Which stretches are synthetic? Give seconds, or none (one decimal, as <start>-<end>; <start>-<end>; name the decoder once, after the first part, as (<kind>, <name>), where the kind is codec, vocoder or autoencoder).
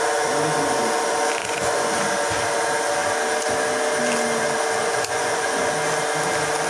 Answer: 1.4-1.9 (vocoder, Vocos); 4.8-5.7